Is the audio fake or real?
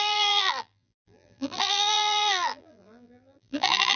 fake